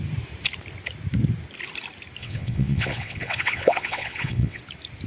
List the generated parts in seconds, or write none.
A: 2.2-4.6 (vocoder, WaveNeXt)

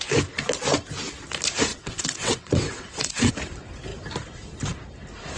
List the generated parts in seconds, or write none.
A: 1.7-3.3 (vocoder, WaveNeXt)

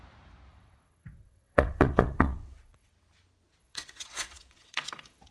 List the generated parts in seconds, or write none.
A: 0.5-2.9 (vocoder, WaveNeXt); 3.6-5.3

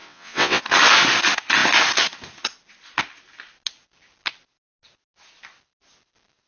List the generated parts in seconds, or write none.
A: 0.0-0.6 (vocoder, WaveNeXt)

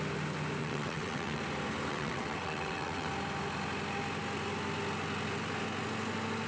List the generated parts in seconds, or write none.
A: 0.6-1.4 (vocoder, WaveNeXt); 1.9-3.1